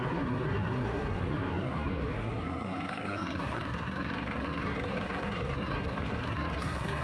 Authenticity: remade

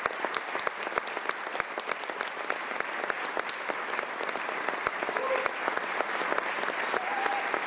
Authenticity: recorded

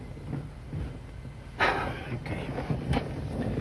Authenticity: recorded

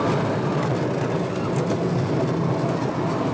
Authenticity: recorded